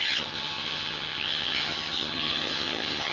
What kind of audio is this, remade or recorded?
remade